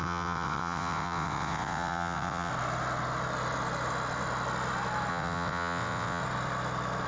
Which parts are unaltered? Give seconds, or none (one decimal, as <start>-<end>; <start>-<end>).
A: 2.5-5.1; 6.2-7.1